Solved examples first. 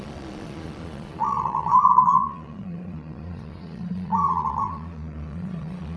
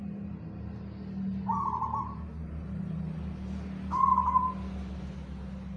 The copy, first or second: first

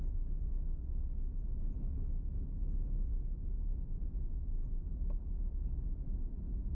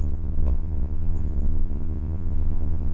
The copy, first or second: second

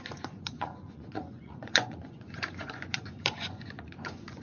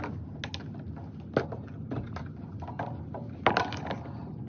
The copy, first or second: first